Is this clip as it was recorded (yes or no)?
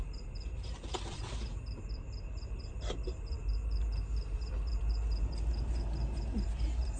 no